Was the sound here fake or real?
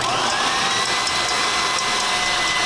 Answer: real